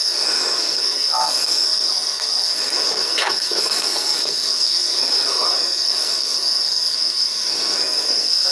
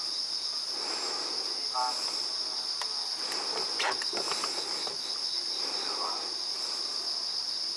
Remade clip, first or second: first